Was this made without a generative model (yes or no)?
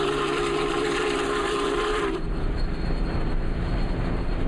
no